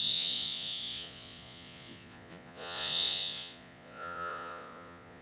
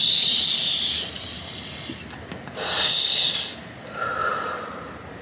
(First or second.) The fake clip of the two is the first